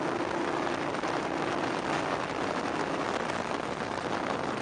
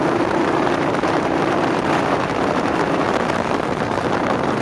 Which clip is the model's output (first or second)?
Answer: second